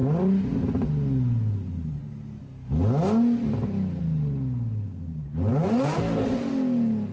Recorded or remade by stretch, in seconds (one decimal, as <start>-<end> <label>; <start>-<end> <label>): 0.0-5.5 recorded; 5.5-6.5 remade; 6.5-7.1 recorded